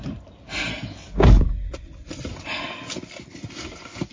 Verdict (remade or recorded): recorded